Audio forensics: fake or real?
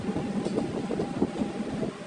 real